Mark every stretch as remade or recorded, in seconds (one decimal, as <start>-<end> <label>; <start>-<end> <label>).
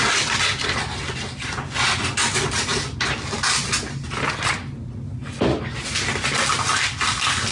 0.0-7.5 recorded